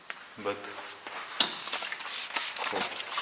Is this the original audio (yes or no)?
yes